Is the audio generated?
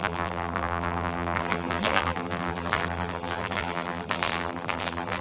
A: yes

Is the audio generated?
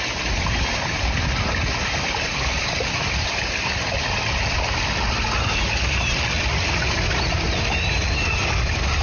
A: no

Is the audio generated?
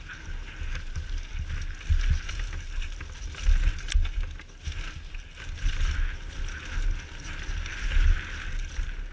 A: no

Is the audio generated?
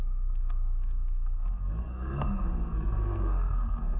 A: yes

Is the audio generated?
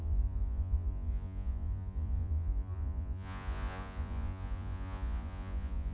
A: yes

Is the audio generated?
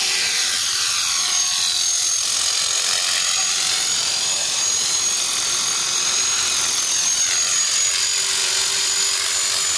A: no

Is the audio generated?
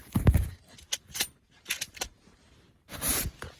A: yes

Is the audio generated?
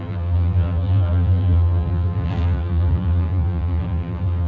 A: yes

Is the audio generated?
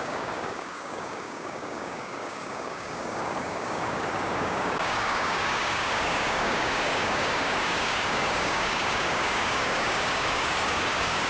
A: yes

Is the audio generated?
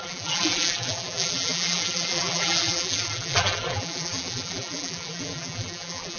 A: yes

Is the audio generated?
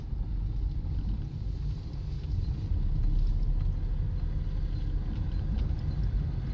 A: no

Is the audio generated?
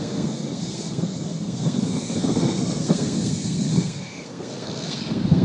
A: yes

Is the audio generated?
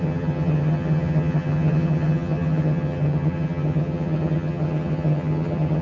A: yes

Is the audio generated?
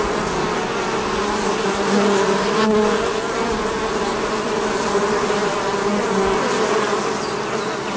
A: no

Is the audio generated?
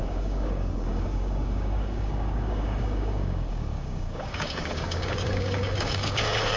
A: yes